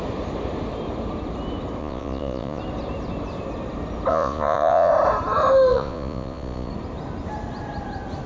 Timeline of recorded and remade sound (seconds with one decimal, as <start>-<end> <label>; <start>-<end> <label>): 0.0-1.8 recorded; 1.8-2.6 remade; 2.6-4.1 recorded; 4.1-4.9 remade; 4.9-5.7 recorded; 5.7-6.7 remade; 6.7-8.3 recorded